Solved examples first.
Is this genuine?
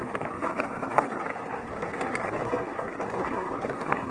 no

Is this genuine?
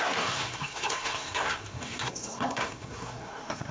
no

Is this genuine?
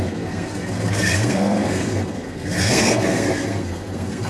no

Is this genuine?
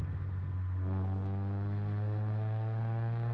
no